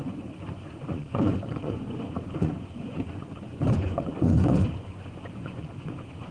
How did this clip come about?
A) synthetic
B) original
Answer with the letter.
A